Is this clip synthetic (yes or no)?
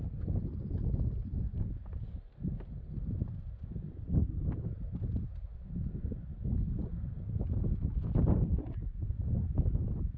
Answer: no